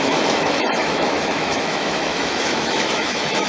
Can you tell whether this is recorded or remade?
remade